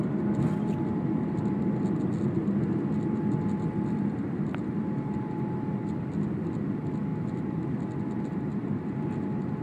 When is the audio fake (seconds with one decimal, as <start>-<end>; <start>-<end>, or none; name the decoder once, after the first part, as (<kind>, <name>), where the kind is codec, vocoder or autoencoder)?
none